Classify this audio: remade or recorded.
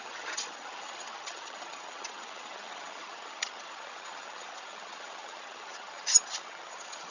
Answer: remade